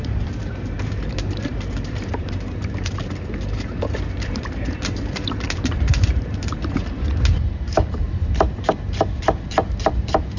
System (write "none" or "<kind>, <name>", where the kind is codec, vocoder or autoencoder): vocoder, BigVGAN v2